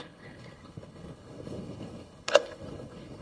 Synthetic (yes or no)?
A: yes